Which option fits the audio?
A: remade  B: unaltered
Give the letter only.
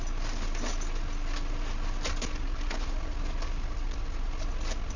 B